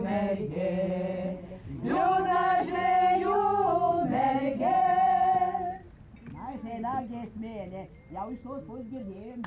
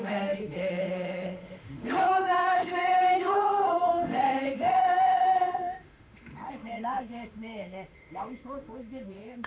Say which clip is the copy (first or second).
second